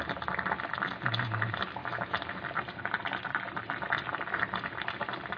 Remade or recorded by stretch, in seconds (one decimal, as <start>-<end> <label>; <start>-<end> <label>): 0.0-1.8 recorded; 1.8-2.4 remade; 2.4-5.4 recorded